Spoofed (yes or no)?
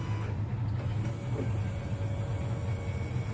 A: no